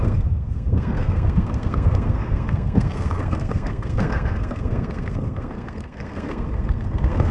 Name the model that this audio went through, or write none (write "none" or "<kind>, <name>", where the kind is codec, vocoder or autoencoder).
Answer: codec, SNAC